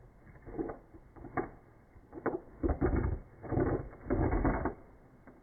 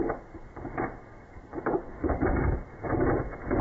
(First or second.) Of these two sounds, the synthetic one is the second